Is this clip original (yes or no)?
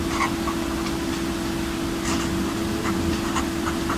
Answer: yes